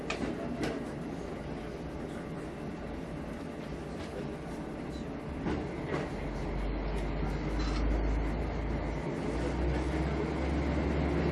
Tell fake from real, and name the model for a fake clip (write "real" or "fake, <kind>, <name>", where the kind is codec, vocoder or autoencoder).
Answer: real